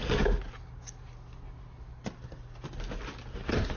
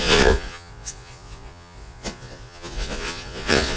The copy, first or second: second